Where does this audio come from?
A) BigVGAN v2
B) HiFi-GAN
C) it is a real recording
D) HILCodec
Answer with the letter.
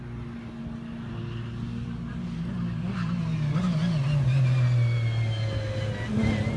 C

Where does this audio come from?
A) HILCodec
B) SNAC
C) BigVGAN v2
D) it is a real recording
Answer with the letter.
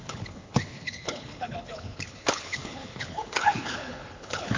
A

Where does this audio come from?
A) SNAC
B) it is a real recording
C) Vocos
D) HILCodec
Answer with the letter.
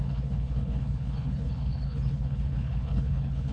D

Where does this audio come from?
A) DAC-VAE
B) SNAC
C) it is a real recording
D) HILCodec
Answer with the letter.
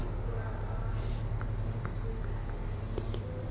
C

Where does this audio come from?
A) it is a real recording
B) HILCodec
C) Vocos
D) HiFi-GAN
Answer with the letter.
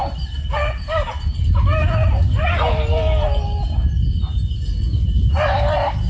A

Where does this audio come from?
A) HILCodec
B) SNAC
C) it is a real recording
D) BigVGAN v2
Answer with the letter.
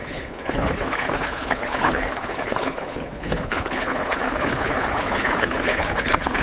A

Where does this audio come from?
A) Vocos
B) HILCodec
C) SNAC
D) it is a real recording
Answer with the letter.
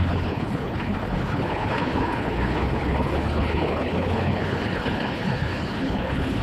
B